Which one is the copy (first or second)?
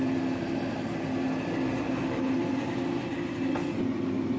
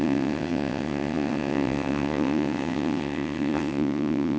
second